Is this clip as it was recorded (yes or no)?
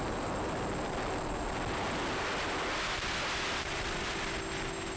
yes